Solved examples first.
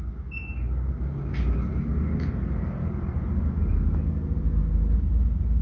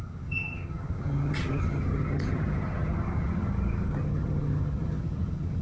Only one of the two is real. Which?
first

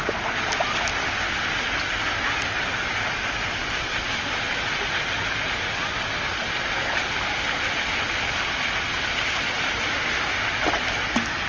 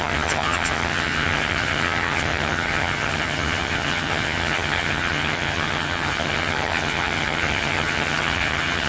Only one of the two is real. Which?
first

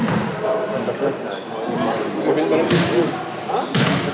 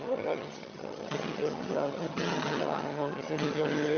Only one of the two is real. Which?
first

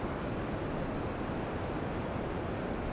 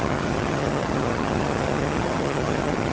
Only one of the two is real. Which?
first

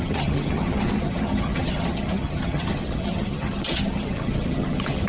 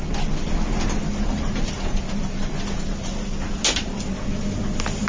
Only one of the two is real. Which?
second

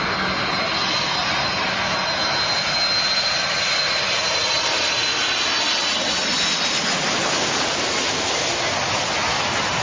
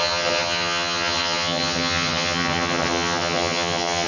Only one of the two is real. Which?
first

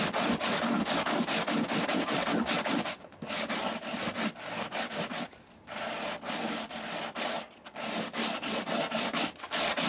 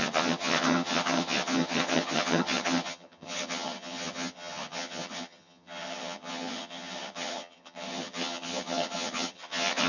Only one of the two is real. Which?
first